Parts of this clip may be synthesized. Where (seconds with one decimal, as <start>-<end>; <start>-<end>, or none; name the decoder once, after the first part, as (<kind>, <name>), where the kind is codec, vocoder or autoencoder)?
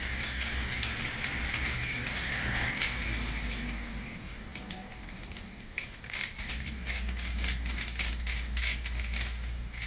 0.0-0.9 (codec, DAC); 1.5-9.9